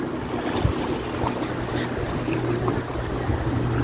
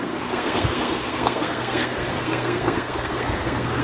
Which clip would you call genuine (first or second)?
first